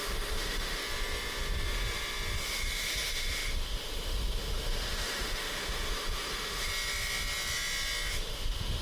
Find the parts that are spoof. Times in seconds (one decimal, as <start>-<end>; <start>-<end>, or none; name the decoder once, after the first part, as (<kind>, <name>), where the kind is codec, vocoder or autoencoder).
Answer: 0.0-0.8 (autoencoder, DAC-VAE); 2.4-6.7; 8.1-8.8